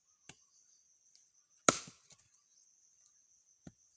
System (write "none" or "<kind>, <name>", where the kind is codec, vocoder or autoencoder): none